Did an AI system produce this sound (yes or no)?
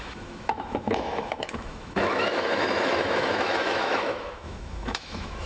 yes